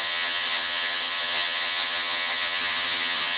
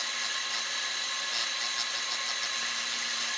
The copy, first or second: first